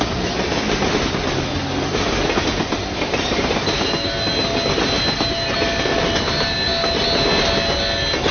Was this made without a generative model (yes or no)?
yes